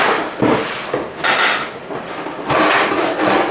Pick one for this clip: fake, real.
real